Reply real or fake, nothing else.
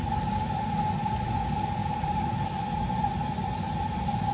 fake